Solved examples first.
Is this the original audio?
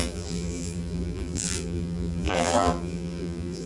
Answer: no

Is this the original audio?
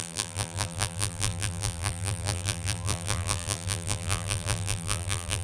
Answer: no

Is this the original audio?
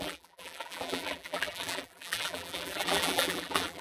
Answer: no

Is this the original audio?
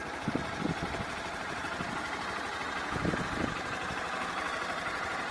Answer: no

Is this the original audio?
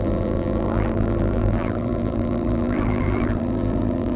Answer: no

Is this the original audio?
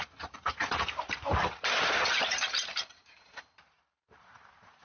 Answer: no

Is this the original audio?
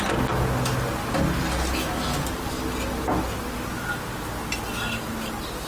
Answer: yes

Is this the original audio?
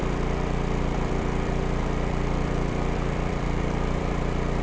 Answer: no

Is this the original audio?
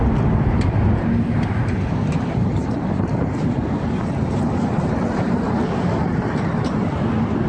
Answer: no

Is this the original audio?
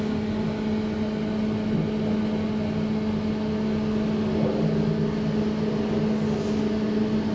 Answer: yes